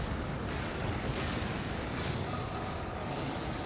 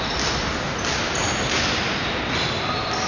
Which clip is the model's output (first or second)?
first